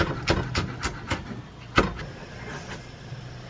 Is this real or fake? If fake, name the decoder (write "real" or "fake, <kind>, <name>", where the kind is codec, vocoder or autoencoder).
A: real